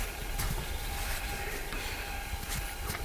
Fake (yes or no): no